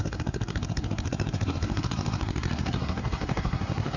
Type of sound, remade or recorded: remade